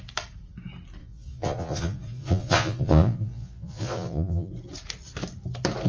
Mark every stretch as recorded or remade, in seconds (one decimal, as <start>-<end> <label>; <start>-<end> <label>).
0.0-1.0 recorded; 1.0-4.5 remade; 4.5-5.9 recorded

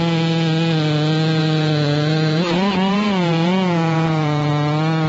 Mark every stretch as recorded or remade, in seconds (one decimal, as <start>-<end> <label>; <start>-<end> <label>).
0.0-1.4 recorded; 1.4-4.5 remade; 4.5-5.1 recorded

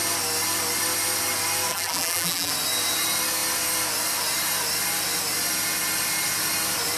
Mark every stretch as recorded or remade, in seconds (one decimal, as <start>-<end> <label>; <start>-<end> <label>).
0.0-1.7 recorded; 1.7-2.5 remade; 2.5-7.0 recorded

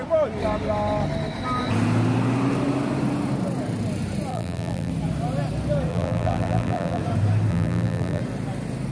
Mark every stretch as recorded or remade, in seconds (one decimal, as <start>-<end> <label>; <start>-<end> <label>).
0.0-4.3 recorded; 4.3-4.9 remade; 4.9-5.9 recorded; 5.9-7.0 remade; 7.0-7.5 recorded; 7.5-8.2 remade; 8.2-8.9 recorded

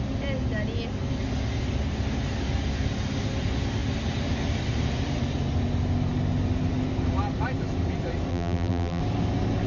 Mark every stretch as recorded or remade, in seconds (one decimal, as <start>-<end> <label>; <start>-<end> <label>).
0.0-8.3 recorded; 8.3-9.0 remade; 9.0-9.7 recorded